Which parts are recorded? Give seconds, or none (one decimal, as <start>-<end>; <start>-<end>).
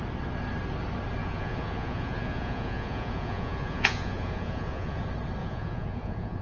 0.0-1.2; 5.0-5.4